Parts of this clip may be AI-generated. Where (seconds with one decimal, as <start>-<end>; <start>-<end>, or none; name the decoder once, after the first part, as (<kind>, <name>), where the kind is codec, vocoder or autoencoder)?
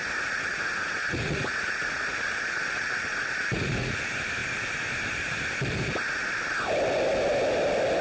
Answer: 0.0-4.0 (vocoder, Vocos)